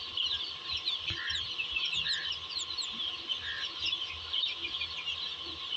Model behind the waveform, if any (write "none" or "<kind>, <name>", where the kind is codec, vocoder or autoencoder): none